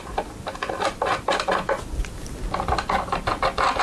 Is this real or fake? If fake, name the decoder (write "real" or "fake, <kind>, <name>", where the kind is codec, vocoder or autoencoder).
real